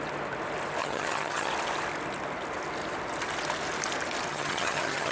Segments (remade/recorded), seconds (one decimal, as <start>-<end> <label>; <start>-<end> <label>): 0.0-0.8 recorded; 0.8-1.5 remade; 1.5-4.3 recorded; 4.3-5.1 remade